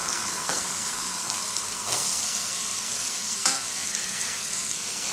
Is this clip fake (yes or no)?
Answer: yes